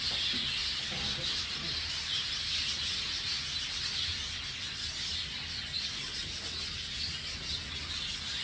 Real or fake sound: real